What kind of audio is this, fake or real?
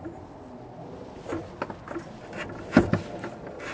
real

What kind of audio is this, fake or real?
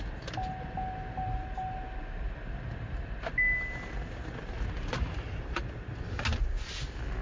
real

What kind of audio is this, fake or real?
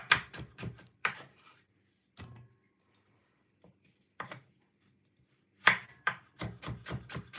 fake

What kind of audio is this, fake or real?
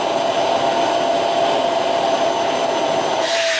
real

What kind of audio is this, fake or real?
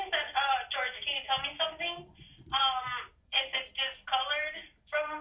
fake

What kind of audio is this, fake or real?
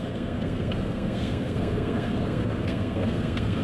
fake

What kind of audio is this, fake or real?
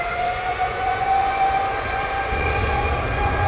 fake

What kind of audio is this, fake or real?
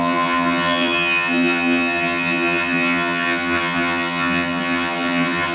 fake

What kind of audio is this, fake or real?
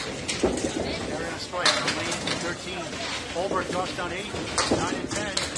real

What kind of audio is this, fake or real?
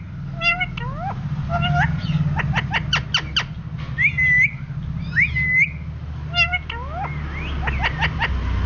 real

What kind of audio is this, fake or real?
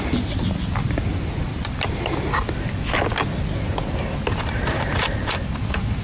real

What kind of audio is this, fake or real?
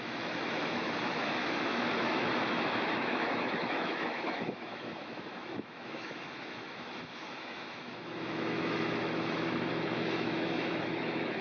fake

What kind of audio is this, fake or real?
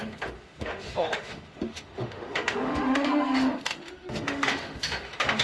fake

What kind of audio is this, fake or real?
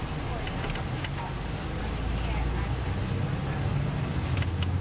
real